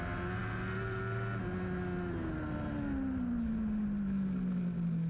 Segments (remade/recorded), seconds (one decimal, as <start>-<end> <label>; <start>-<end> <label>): 0.0-5.1 recorded